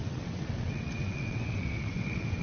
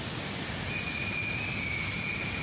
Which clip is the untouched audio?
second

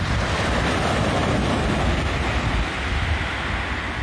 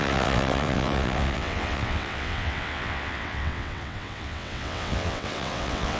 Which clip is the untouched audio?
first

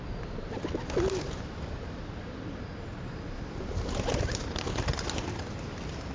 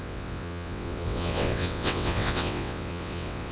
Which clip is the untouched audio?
first